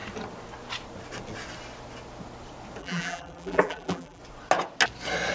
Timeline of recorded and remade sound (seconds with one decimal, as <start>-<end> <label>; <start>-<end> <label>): 0.0-2.8 recorded; 2.8-4.2 remade; 4.2-5.3 recorded